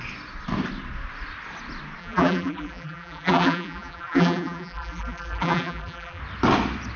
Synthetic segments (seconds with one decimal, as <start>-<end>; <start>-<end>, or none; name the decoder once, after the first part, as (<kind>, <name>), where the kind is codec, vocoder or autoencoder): 2.0-6.2 (vocoder, BigVGAN v2)